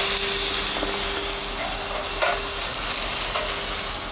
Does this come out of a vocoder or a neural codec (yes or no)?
no